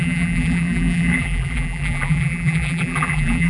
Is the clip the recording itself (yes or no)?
no